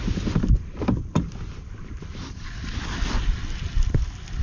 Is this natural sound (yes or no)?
yes